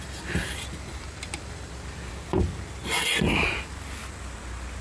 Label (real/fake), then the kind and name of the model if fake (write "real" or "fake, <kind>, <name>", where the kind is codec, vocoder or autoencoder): real